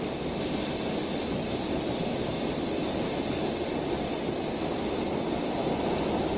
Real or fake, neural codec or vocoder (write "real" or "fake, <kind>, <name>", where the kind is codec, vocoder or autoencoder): real